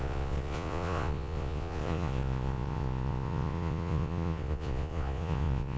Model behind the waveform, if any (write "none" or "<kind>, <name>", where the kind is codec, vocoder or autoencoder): vocoder, Vocos